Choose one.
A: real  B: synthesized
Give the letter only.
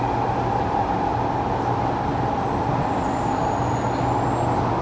A